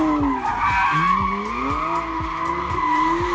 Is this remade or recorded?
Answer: recorded